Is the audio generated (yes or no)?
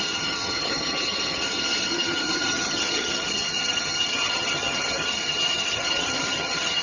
yes